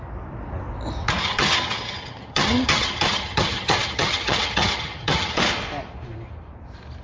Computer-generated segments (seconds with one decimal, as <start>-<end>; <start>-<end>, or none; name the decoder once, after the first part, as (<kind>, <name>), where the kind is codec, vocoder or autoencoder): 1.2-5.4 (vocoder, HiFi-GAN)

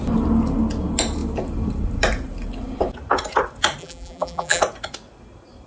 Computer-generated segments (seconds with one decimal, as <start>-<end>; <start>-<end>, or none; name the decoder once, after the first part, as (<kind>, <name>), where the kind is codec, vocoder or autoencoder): 3.8-4.6 (vocoder, BigVGAN v2)

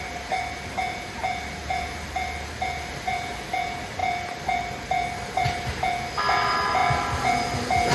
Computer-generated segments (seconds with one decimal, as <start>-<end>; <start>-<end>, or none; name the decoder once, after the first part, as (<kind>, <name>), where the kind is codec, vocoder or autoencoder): none

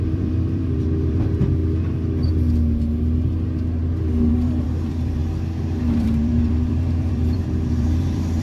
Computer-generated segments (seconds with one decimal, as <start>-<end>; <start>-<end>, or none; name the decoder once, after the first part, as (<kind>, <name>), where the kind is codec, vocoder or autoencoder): 0.0-1.6 (vocoder, BigVGAN v2); 4.3-5.2; 5.8-8.4